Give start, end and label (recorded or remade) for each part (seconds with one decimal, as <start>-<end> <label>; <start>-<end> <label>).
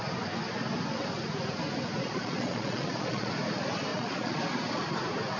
0.0-2.0 recorded; 2.0-3.3 remade; 3.3-3.9 recorded; 3.9-4.4 remade; 4.4-5.4 recorded